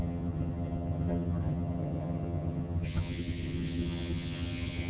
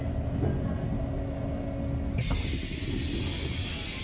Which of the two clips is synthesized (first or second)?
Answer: first